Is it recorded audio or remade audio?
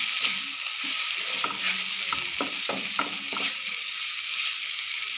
recorded